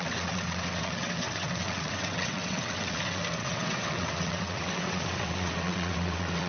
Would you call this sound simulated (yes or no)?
yes